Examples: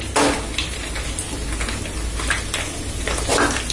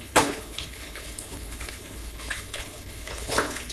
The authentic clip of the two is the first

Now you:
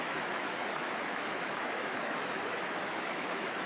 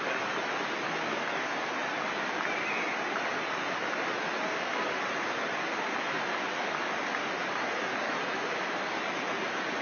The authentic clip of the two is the second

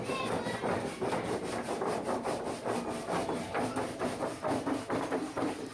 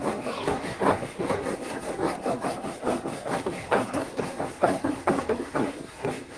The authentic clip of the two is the first